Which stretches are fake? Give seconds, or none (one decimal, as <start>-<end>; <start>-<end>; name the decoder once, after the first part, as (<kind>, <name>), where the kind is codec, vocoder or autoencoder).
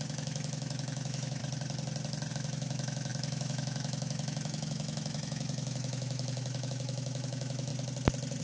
0.0-1.4 (autoencoder, DAC-VAE); 2.3-7.7